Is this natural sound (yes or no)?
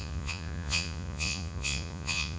no